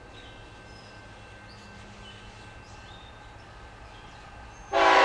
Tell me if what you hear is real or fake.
real